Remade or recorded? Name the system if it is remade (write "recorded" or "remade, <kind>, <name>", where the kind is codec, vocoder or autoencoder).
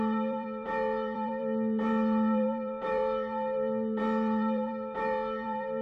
remade, vocoder, BigVGAN v2